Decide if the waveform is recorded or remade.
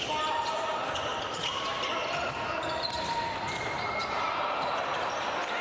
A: remade